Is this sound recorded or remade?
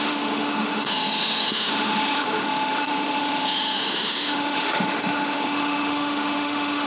remade